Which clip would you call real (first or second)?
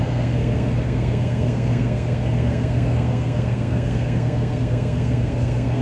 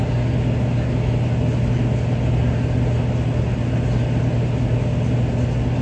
second